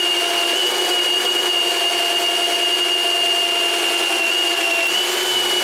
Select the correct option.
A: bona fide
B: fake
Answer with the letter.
A